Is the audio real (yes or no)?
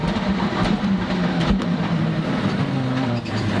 no